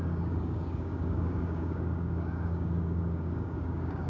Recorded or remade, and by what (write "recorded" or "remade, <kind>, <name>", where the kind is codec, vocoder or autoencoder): remade, codec, DAC